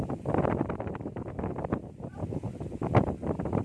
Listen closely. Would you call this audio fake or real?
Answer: real